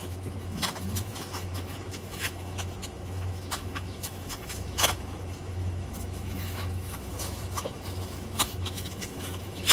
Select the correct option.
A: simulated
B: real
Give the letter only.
A